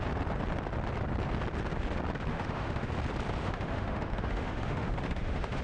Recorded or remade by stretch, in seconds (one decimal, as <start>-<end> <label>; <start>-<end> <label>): 0.0-2.3 recorded; 2.3-2.9 remade; 2.9-3.4 recorded; 3.4-5.6 remade